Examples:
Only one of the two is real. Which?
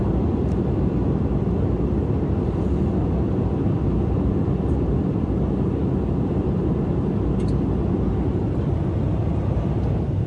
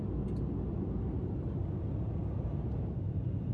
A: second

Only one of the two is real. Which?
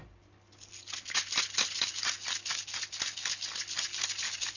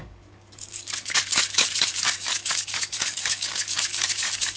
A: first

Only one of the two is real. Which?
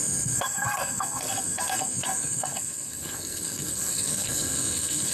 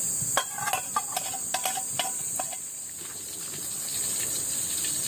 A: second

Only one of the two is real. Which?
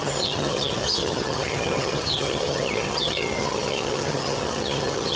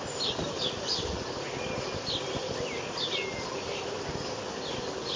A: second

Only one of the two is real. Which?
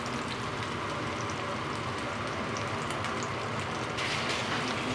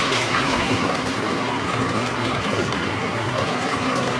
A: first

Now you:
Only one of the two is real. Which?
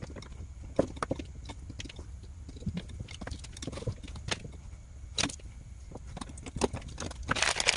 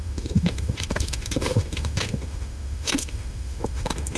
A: first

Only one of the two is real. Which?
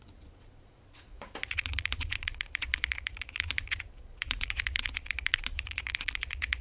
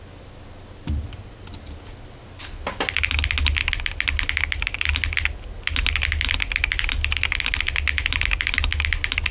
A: second